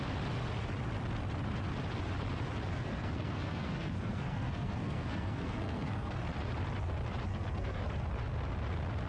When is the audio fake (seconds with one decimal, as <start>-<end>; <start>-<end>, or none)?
2.7-6.2; 7.3-7.8